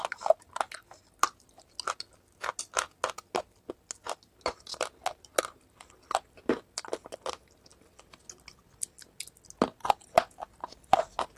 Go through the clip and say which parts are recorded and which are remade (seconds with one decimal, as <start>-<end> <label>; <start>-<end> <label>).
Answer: 0.0-11.4 recorded